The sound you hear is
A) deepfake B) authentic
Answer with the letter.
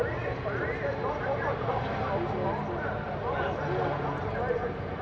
B